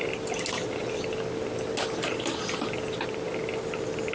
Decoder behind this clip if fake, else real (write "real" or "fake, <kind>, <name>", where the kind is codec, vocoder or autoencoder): real